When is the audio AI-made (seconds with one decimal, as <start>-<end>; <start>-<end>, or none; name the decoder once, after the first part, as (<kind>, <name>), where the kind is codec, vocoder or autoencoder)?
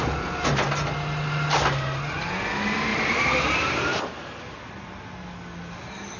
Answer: 2.9-4.0 (vocoder, BigVGAN v2)